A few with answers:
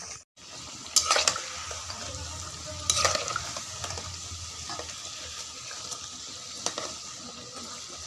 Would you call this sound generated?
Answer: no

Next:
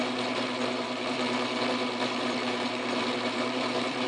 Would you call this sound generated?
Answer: yes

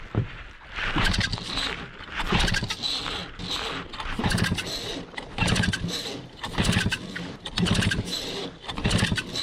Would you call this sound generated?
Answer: no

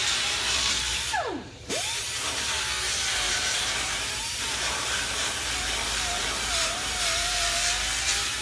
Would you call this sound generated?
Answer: yes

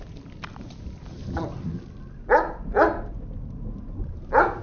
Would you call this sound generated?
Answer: no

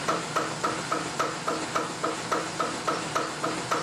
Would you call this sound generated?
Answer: no